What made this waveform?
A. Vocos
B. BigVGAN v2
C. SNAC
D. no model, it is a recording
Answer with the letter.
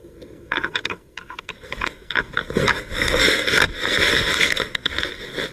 C